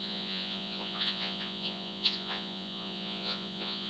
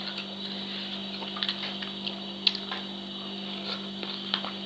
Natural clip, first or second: second